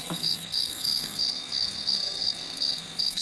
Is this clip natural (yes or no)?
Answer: no